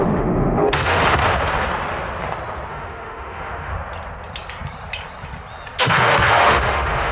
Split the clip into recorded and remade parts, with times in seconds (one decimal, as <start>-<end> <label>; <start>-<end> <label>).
0.0-1.2 remade; 1.2-2.7 recorded; 2.7-3.7 remade; 3.7-5.8 recorded; 5.8-7.1 remade